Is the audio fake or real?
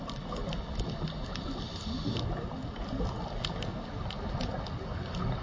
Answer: real